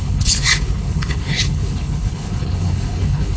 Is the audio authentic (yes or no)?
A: no